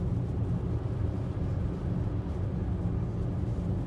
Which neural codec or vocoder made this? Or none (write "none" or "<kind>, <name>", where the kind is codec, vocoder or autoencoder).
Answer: none